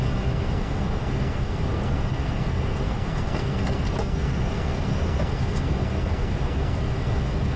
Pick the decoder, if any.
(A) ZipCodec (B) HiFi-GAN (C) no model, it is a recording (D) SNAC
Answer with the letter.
D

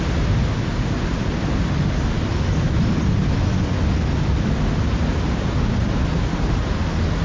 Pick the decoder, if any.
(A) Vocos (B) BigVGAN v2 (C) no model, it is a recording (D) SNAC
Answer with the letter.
C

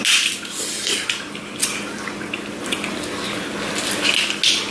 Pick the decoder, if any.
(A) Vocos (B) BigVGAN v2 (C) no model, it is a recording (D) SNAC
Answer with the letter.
C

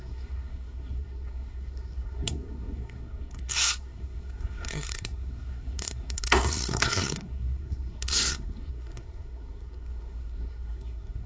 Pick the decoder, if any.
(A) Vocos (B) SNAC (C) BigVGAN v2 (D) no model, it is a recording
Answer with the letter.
B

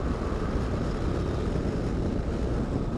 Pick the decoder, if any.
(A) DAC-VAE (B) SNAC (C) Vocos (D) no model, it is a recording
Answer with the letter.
D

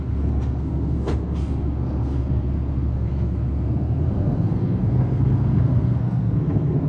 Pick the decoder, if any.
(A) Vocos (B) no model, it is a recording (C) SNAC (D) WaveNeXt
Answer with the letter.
C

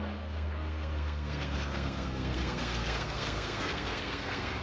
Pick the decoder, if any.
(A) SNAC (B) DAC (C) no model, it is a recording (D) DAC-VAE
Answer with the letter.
A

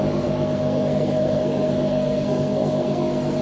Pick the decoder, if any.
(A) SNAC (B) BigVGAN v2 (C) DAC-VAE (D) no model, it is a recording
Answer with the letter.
A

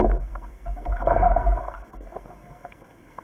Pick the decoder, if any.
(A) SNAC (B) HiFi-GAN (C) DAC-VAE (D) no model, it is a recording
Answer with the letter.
A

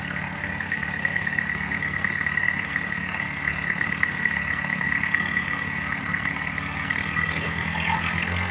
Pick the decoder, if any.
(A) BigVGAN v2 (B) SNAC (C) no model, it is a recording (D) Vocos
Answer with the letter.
B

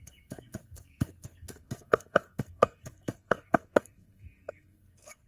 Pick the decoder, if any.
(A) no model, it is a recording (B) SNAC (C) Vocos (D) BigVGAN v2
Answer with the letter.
B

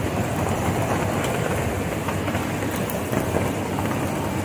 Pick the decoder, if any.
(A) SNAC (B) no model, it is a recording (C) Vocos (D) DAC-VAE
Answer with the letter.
B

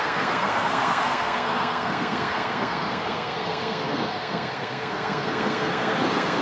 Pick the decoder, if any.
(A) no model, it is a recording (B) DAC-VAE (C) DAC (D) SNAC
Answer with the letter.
D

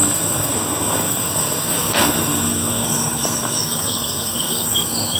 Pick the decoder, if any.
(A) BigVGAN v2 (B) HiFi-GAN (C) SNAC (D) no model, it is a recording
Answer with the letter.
C